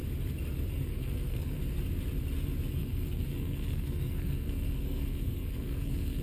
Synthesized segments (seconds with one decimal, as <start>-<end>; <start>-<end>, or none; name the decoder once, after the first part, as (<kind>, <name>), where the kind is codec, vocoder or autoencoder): 0.7-1.6 (codec, SNAC); 2.7-6.2